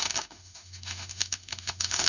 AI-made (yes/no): yes